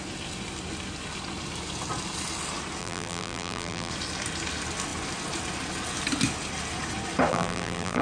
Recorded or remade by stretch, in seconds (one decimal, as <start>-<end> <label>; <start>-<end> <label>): 0.0-2.8 recorded; 2.8-3.9 remade; 3.9-7.3 recorded; 7.3-8.0 remade